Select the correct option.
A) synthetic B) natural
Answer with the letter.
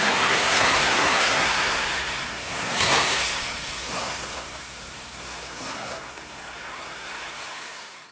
A